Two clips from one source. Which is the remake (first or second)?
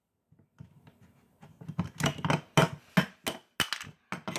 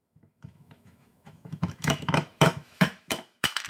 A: second